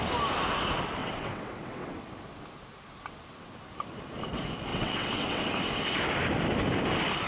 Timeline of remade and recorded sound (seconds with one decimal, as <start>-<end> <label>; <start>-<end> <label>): 0.0-1.0 recorded; 1.0-2.1 remade; 2.1-4.7 recorded; 4.7-5.4 remade; 5.4-7.3 recorded